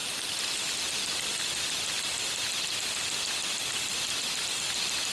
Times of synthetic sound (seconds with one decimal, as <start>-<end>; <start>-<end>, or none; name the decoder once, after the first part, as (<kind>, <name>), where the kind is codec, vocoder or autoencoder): none